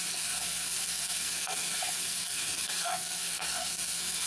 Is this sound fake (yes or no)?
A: yes